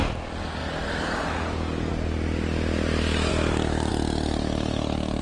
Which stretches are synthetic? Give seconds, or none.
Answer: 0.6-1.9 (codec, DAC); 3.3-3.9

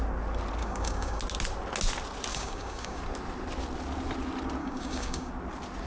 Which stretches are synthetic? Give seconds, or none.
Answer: 0.6-1.2 (codec, DAC); 2.3-3.0; 4.6-5.3